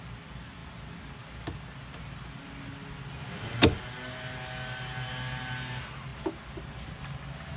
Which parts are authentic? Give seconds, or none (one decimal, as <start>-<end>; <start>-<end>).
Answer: 0.0-7.6